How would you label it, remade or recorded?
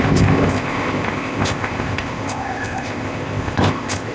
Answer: remade